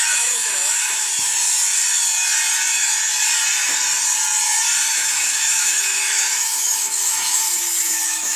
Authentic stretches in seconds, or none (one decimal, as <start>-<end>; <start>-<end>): 1.1-4.9